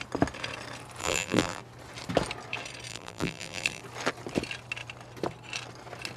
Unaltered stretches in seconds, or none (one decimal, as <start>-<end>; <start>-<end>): 0.0-1.0; 1.6-2.9; 3.8-6.2